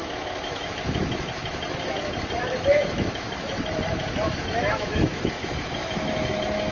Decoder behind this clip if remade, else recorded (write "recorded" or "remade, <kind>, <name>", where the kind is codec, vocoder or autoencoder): remade, autoencoder, DAC-VAE